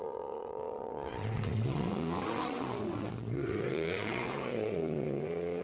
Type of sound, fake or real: fake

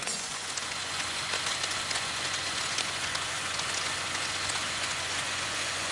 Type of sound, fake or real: fake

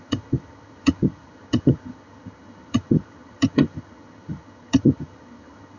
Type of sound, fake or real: fake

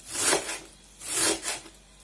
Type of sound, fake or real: fake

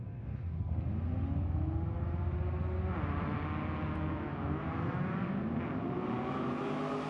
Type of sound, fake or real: real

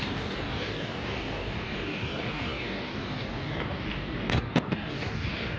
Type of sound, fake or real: fake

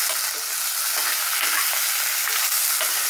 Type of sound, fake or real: real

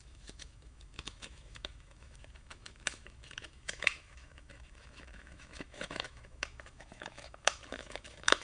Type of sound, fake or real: fake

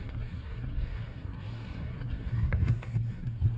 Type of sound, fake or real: fake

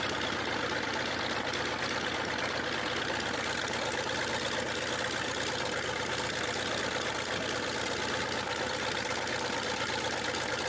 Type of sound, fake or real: real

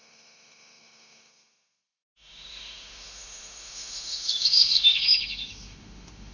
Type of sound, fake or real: fake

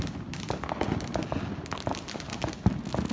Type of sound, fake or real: real